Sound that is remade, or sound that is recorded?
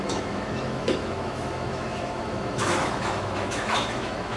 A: remade